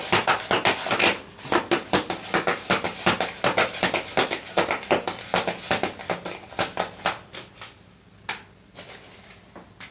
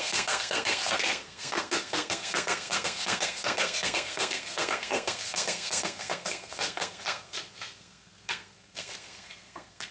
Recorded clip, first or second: first